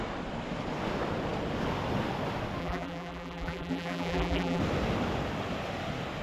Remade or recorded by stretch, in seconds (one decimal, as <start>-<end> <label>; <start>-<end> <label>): 0.0-2.6 recorded; 2.6-4.6 remade; 4.6-6.2 recorded